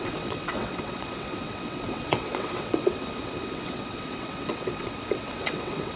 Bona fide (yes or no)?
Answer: no